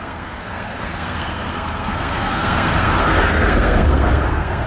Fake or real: fake